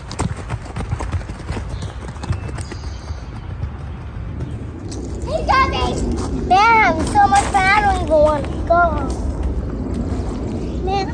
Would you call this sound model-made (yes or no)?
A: no